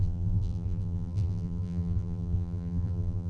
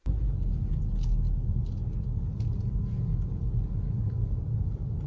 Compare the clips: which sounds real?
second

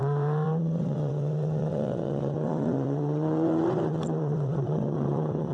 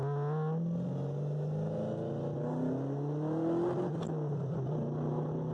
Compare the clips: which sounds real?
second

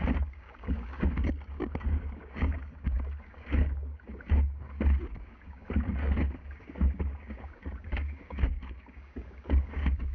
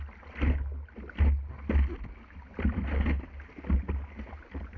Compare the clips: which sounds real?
second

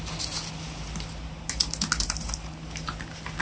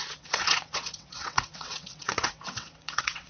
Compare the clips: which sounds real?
first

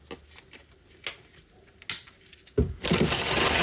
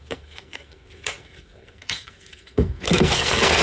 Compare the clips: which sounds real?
first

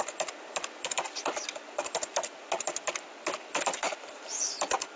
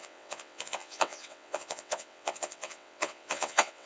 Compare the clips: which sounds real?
first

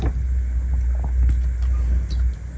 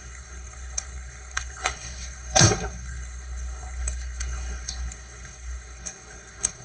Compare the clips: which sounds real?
first